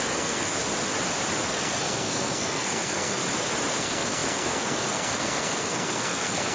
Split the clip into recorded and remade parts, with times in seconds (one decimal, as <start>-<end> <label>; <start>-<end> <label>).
0.0-0.6 remade; 0.6-1.5 recorded; 1.5-3.2 remade; 3.2-3.7 recorded; 3.7-6.5 remade